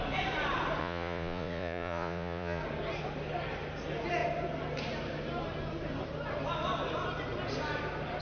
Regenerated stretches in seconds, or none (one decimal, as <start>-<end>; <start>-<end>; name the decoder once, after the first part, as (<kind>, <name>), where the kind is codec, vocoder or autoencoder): 0.8-2.6 (vocoder, Vocos)